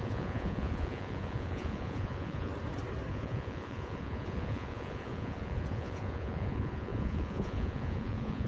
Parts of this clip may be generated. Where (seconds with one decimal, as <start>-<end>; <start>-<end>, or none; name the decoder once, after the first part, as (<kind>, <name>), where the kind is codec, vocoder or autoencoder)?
0.0-2.5 (vocoder, Vocos); 3.1-8.5

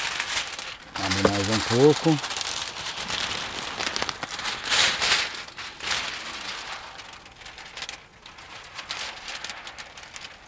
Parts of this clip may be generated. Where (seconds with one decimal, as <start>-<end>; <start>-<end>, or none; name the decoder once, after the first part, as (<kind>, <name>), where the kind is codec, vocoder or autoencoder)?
8.1-8.8 (vocoder, Vocos)

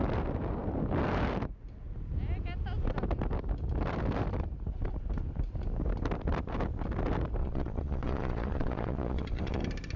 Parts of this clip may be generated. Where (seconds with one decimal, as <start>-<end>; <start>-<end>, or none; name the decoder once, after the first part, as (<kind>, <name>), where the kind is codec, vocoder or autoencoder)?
7.4-9.6 (vocoder, Vocos)

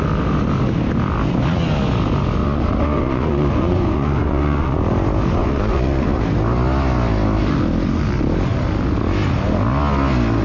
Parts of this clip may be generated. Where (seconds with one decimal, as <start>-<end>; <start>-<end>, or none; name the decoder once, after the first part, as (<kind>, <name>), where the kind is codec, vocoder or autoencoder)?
2.4-4.8 (vocoder, Vocos); 5.4-6.2

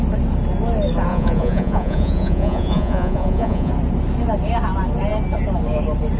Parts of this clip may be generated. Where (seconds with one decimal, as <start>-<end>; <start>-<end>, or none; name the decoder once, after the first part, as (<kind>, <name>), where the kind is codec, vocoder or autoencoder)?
1.1-3.7 (vocoder, Vocos)

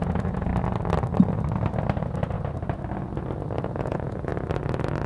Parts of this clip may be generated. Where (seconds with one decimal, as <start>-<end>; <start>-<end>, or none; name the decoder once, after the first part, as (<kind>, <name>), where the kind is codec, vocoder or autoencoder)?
0.0-0.5 (vocoder, Vocos); 3.6-4.3

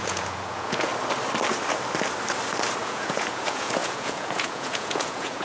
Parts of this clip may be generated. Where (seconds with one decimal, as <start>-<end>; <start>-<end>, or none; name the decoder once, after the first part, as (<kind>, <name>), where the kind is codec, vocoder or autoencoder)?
0.0-0.9 (vocoder, Vocos); 2.8-5.4

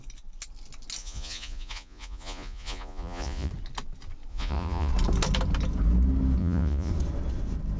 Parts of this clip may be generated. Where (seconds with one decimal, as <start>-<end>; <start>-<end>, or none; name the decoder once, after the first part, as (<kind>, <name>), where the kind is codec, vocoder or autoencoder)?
1.0-3.5 (vocoder, Vocos); 4.3-4.9; 6.4-6.9